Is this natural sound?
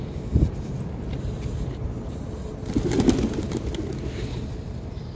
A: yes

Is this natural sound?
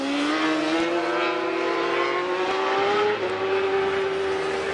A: yes